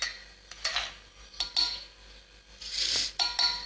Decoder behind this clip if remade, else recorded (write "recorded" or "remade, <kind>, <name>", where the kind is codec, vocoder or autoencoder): recorded